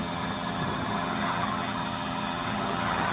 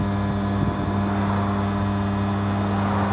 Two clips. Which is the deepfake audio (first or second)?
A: first